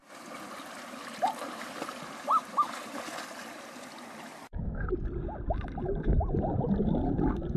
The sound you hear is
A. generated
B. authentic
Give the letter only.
B